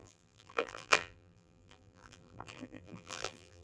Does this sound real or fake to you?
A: fake